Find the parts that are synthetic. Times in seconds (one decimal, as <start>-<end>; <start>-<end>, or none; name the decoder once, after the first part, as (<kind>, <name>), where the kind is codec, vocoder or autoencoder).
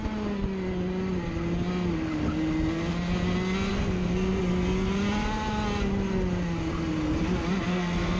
3.7-4.4 (codec, SNAC); 7.7-8.2